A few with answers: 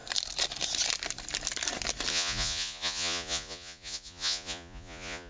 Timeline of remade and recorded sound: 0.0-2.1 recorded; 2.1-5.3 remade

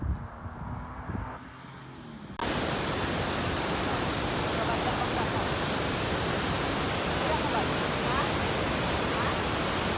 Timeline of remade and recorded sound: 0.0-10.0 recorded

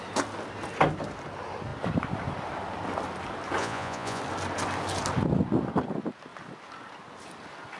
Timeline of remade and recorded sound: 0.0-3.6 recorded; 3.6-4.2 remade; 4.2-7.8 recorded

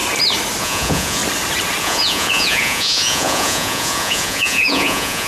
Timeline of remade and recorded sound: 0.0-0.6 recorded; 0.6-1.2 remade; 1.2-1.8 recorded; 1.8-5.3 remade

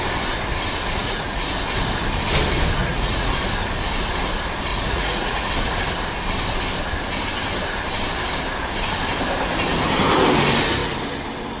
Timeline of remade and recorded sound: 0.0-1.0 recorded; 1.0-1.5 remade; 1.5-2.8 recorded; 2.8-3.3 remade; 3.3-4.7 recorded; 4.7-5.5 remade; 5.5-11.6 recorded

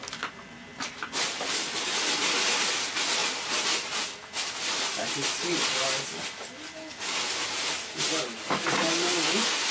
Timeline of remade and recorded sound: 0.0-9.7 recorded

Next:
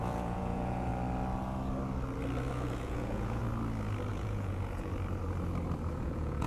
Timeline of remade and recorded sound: 0.0-0.9 remade; 0.9-2.5 recorded; 2.5-3.4 remade; 3.4-4.1 recorded; 4.1-4.9 remade; 4.9-5.9 recorded; 5.9-6.5 remade